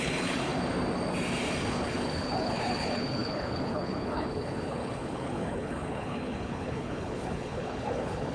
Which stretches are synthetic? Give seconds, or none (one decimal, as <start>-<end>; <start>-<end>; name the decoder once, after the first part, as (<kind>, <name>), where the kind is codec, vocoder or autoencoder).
0.0-0.5 (codec, HILCodec); 1.7-8.3